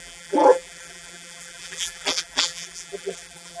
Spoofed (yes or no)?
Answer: yes